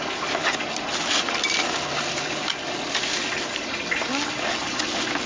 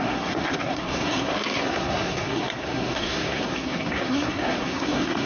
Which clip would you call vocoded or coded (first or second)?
second